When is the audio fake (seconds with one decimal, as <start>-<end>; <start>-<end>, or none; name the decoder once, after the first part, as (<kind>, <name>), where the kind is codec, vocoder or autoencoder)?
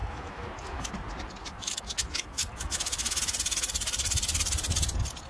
0.0-0.9 (autoencoder, DAC-VAE); 1.4-3.2